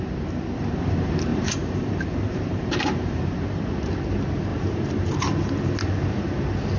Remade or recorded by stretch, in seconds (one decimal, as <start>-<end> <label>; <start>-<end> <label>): 0.0-1.3 recorded; 1.3-3.6 remade; 3.6-4.5 recorded; 4.5-5.3 remade; 5.3-6.8 recorded